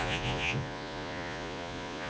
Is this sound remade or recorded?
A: remade